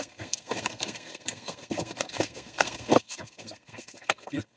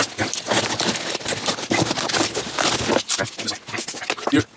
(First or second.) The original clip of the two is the second